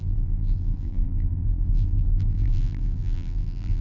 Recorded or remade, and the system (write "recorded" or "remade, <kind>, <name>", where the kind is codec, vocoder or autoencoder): remade, vocoder, BigVGAN v2